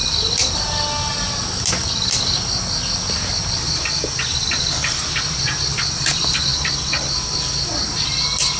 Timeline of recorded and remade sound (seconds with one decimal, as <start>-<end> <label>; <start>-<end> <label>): 0.0-8.6 recorded